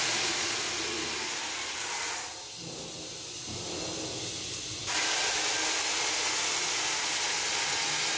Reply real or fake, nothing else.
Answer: real